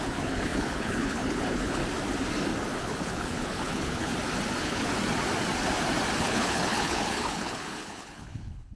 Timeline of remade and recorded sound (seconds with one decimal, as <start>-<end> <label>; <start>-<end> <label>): 0.0-1.8 remade; 1.8-2.8 recorded; 2.8-4.1 remade; 4.1-4.6 recorded; 4.6-5.0 remade; 5.0-6.2 recorded; 6.2-8.8 remade